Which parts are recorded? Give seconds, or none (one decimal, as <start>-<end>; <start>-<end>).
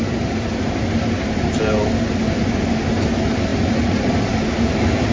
0.0-5.1